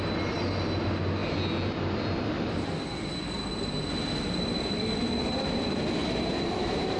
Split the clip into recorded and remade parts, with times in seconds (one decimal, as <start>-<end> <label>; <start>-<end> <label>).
0.0-6.0 recorded; 6.0-7.0 remade